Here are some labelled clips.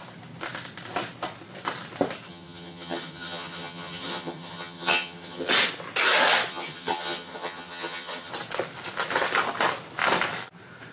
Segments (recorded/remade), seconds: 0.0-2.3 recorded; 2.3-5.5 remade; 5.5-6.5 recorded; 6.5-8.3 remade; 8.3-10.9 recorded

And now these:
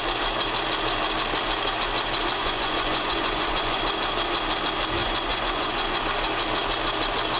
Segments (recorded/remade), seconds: 0.0-2.4 recorded; 2.4-3.8 remade; 3.8-5.0 recorded; 5.0-6.0 remade; 6.0-7.4 recorded

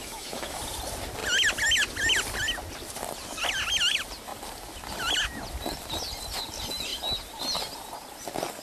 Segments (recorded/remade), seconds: 0.0-0.6 remade; 0.6-8.6 recorded